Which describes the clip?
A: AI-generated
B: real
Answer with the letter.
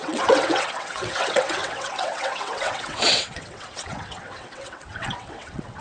A